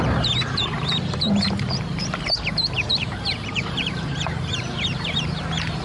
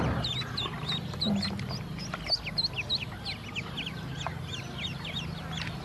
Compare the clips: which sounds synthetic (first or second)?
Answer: first